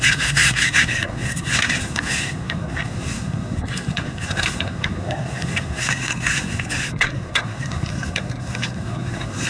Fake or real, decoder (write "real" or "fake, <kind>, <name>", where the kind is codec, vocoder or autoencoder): fake, codec, SNAC